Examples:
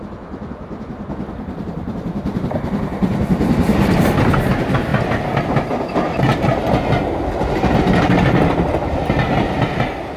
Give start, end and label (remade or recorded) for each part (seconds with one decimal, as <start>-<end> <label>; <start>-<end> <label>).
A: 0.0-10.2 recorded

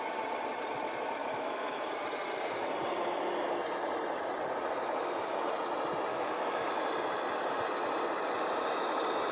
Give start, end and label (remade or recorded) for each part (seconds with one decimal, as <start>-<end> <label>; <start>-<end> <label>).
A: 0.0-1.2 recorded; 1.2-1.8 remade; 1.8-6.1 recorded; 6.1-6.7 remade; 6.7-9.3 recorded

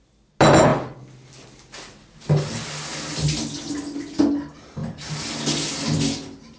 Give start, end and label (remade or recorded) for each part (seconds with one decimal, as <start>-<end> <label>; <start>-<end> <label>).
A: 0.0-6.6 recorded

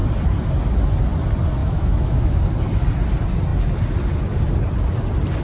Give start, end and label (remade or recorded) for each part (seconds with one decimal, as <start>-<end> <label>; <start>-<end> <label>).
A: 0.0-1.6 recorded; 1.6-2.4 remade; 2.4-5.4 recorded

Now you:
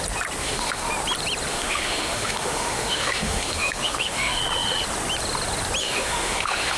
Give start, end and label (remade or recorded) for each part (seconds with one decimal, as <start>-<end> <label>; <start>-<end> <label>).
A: 0.0-0.4 recorded; 0.4-0.9 remade; 0.9-1.5 recorded; 1.5-4.4 remade; 4.4-5.8 recorded; 5.8-6.8 remade

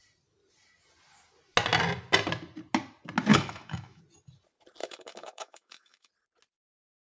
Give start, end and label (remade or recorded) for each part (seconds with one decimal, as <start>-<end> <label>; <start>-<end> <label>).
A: 0.0-3.3 recorded; 3.3-4.0 remade; 4.0-4.8 recorded; 4.8-6.1 remade; 6.1-7.1 recorded

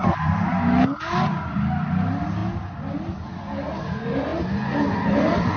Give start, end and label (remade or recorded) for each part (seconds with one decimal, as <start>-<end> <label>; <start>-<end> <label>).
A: 0.0-5.6 recorded

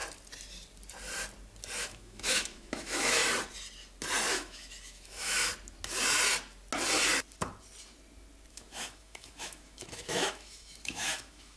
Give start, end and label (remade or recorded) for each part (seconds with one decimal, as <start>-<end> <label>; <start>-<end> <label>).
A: 0.0-1.8 recorded; 1.8-3.2 remade; 3.2-4.3 recorded; 4.3-5.5 remade; 5.5-8.5 recorded; 8.5-11.6 remade